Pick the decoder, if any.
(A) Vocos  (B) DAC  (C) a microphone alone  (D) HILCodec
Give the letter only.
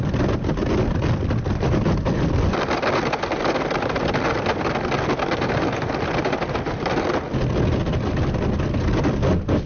C